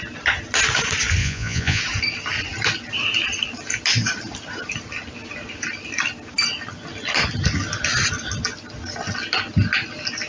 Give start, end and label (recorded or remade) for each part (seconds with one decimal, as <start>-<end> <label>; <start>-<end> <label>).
0.0-1.2 recorded; 1.2-1.8 remade; 1.8-10.3 recorded